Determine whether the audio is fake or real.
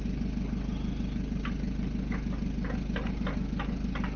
real